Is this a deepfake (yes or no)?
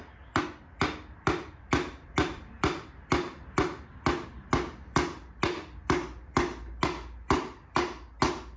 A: no